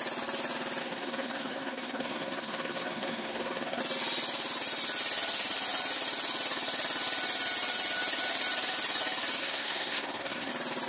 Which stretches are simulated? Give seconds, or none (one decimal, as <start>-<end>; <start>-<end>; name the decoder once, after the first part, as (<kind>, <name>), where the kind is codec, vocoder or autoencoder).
0.8-3.8 (codec, SNAC); 9.4-10.5